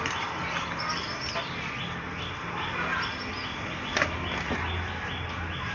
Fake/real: real